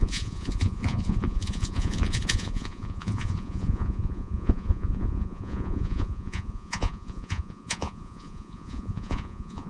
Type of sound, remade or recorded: remade